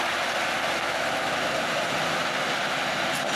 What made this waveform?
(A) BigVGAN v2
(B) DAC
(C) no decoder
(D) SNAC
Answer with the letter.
C